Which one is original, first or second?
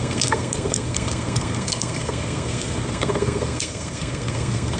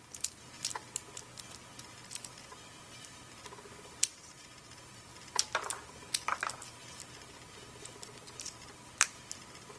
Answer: second